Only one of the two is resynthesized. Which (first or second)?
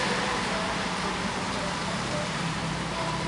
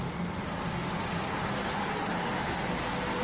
first